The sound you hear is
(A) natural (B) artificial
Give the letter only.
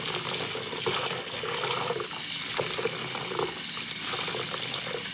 A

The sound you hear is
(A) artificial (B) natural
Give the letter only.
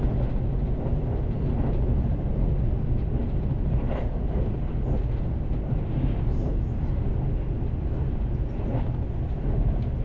B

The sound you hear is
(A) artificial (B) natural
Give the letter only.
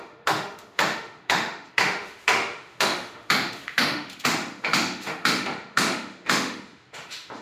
A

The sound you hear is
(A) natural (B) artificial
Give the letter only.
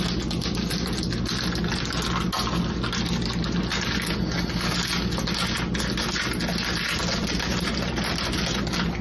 A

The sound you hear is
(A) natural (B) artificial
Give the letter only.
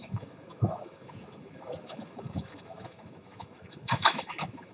B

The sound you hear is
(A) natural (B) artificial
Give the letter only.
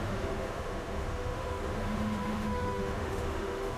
B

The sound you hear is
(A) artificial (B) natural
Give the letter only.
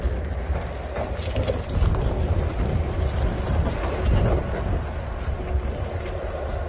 B